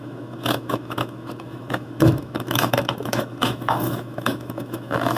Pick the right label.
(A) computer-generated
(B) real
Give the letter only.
A